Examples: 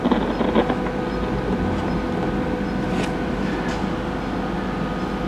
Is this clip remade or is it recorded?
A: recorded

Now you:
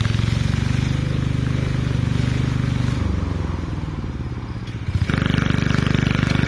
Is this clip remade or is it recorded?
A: recorded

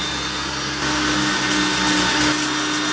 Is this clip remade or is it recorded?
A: recorded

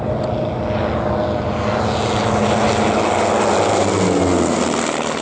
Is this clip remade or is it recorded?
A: recorded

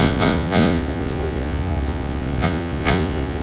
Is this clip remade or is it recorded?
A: remade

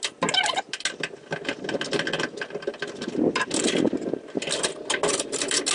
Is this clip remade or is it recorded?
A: recorded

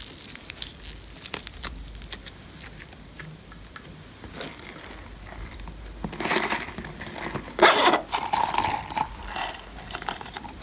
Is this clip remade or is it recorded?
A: recorded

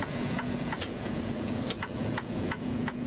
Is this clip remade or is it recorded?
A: remade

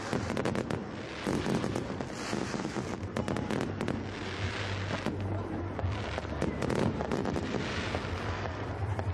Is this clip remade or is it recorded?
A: recorded